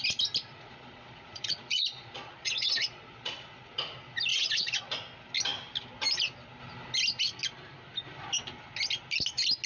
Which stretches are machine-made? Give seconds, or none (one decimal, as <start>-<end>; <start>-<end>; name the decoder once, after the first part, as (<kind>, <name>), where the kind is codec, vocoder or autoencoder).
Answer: 0.5-3.7 (vocoder, Vocos); 4.3-5.0